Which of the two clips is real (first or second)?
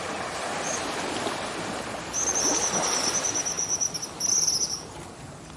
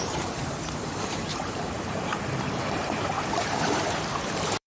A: first